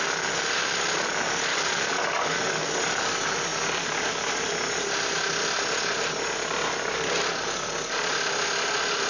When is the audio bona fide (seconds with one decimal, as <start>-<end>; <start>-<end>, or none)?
0.0-1.5; 2.7-9.1